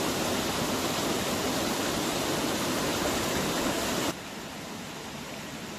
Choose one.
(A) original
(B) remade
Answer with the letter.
A